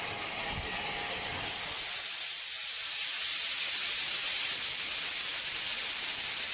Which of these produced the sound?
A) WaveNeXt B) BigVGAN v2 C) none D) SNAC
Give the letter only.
C